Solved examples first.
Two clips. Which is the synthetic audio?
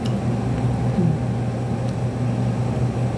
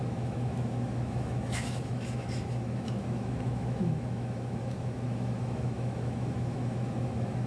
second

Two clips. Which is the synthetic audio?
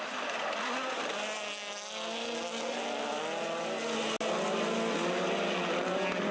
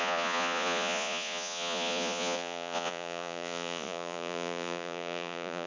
second